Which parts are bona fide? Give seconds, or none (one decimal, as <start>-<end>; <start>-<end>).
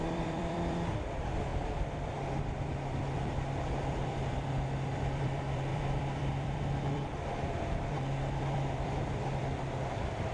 none